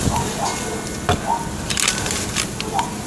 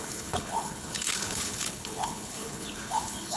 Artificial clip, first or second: second